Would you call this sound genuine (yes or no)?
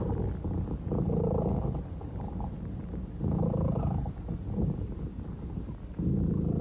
yes